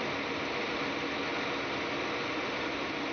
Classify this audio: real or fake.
real